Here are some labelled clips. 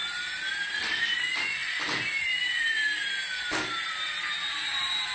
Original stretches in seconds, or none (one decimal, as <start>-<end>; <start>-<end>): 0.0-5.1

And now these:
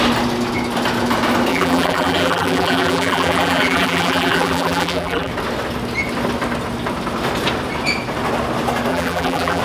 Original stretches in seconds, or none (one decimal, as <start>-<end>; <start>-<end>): 0.0-1.5; 5.3-8.9

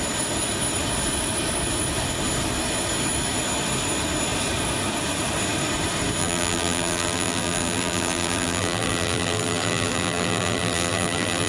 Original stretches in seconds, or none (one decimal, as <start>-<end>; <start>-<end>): 0.0-6.2

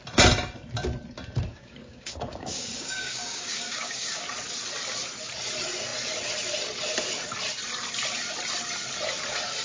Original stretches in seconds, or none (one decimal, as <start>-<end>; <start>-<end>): 0.0-1.5; 4.2-9.6

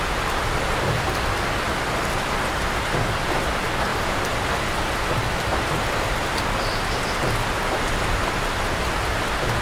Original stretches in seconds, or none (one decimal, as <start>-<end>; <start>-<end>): 0.0-9.6

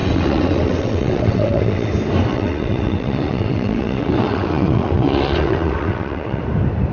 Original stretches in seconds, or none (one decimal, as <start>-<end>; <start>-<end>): 1.9-2.3; 6.4-6.9